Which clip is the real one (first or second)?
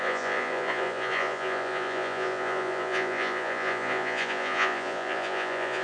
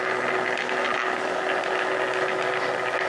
second